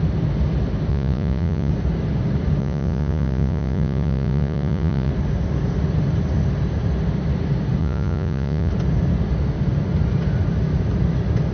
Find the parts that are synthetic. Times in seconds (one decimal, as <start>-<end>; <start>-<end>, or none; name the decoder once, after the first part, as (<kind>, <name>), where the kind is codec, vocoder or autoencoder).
0.9-1.7 (vocoder, Vocos); 2.6-5.1; 7.8-8.7